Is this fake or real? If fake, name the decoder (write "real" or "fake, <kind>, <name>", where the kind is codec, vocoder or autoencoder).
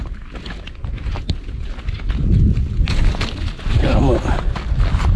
real